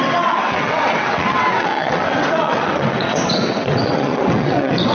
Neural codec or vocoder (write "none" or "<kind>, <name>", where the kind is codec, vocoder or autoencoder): vocoder, WaveNeXt